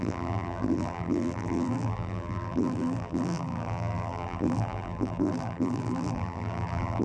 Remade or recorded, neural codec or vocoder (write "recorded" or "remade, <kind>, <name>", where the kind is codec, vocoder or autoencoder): remade, vocoder, BigVGAN v2